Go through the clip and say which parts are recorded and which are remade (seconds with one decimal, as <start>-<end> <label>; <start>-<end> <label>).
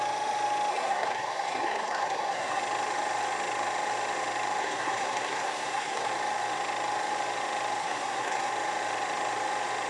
0.0-0.7 recorded; 0.7-2.6 remade; 2.6-4.6 recorded; 4.6-6.1 remade; 6.1-7.8 recorded; 7.8-8.5 remade; 8.5-9.9 recorded